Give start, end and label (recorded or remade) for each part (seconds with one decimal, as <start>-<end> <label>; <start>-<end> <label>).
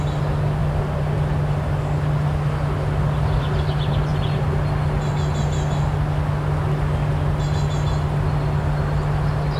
0.0-9.6 recorded